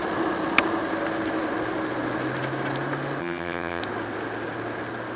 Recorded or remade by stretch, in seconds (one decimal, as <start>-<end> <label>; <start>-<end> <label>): 0.0-3.2 recorded; 3.2-3.8 remade; 3.8-5.2 recorded